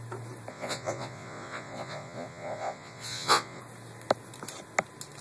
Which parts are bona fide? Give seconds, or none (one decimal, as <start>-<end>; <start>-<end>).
0.0-0.5; 3.6-5.2